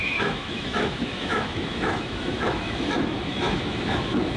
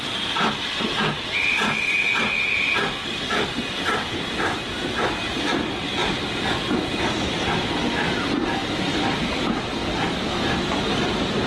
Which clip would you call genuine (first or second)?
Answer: second